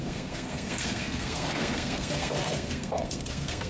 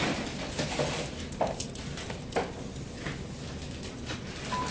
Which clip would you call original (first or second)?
second